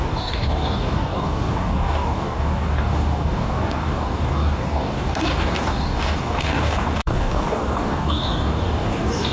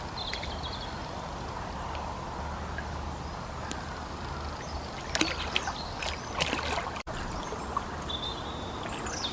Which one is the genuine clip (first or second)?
second